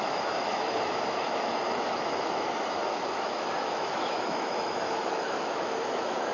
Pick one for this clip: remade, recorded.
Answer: remade